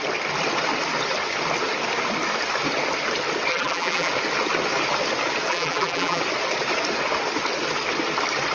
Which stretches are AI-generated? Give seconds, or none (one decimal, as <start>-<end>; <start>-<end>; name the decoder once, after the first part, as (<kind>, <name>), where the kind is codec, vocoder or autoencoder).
3.5-4.1 (vocoder, BigVGAN v2); 5.5-6.2